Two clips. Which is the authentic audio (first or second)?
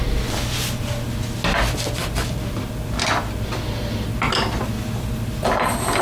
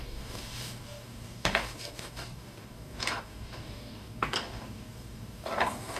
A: first